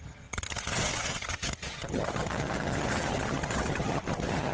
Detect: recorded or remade remade